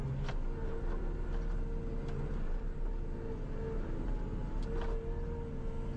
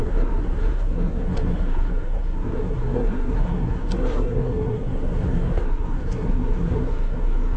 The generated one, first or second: second